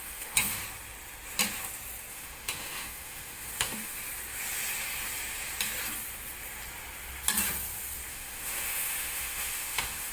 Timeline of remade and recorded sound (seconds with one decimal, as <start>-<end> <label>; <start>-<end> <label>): 0.0-0.6 remade; 0.6-2.1 recorded; 2.1-4.0 remade; 4.0-8.1 recorded; 8.1-10.1 remade

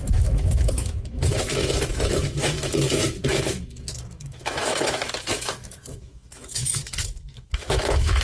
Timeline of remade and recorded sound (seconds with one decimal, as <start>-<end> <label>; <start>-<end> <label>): 0.0-8.2 remade

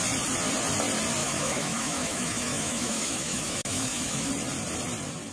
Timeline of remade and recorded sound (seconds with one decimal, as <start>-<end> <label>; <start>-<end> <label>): 0.0-1.2 recorded; 1.2-4.3 remade; 4.3-5.3 recorded

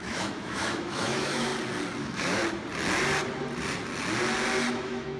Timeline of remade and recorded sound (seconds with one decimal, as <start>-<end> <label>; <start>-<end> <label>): 0.0-1.5 remade; 1.5-2.0 recorded; 2.0-2.4 remade; 2.4-4.7 recorded; 4.7-5.2 remade

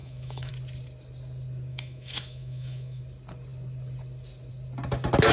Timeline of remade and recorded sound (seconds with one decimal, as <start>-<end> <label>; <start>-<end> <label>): 0.0-0.5 remade; 0.5-1.7 recorded; 1.7-3.0 remade; 3.0-5.3 recorded

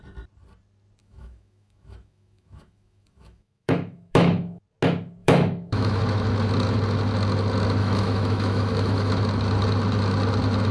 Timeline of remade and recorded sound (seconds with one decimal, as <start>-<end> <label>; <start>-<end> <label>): 0.0-1.0 recorded; 1.0-4.6 remade; 4.6-5.2 recorded; 5.2-6.0 remade; 6.0-7.8 recorded; 7.8-9.1 remade; 9.1-10.7 recorded

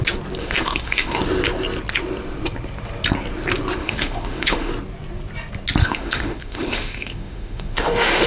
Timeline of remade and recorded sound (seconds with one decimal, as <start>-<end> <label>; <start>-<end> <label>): 0.0-0.4 recorded; 0.4-1.2 remade; 1.2-3.8 recorded; 3.8-4.7 remade; 4.7-5.8 recorded; 5.8-8.3 remade